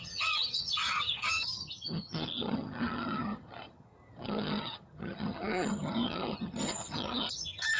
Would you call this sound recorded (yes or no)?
no